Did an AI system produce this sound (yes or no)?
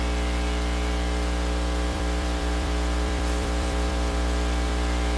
yes